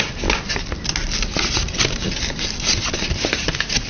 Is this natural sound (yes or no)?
yes